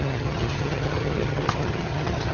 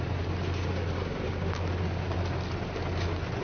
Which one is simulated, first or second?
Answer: first